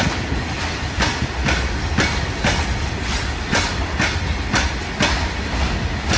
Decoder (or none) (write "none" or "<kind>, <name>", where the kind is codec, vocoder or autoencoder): none